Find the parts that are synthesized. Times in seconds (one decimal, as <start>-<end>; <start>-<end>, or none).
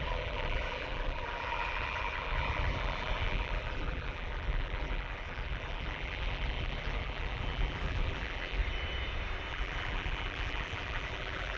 0.0-8.6; 9.5-11.6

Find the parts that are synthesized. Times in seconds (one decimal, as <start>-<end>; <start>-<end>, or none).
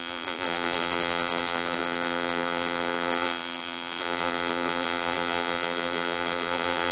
0.0-6.9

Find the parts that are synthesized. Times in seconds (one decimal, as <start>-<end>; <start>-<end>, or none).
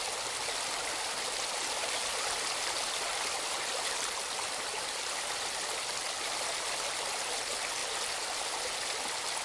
none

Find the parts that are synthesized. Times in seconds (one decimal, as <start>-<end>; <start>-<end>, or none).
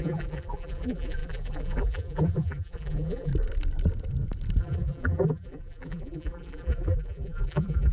0.0-3.3; 4.6-7.9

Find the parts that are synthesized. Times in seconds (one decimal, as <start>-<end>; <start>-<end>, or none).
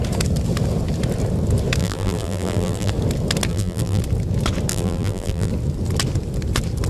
1.8-2.9; 3.5-4.0; 4.7-5.5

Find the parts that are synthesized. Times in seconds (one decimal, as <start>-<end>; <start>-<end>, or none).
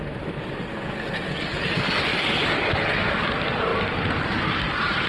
2.1-3.3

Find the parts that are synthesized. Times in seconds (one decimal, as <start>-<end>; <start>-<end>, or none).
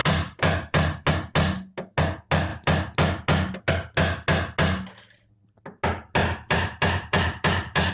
0.0-1.1; 6.2-7.9